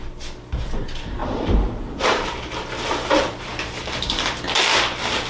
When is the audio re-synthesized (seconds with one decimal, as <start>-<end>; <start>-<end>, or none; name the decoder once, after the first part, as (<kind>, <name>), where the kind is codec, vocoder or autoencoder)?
1.2-4.4 (vocoder, BigVGAN v2)